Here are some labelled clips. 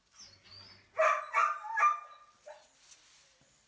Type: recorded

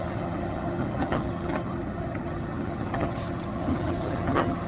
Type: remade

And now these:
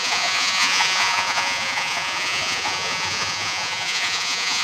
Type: remade